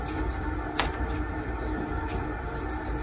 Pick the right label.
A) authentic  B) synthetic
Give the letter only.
A